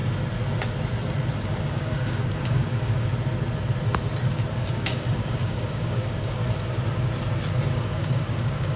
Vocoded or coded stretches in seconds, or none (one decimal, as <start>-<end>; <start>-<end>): 1.4-3.1; 4.5-6.4; 7.7-8.8